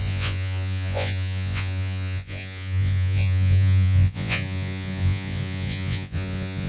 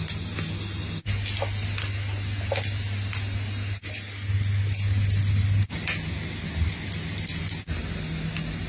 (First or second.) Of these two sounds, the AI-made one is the first